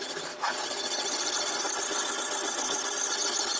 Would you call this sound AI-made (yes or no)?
no